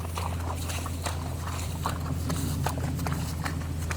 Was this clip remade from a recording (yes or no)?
no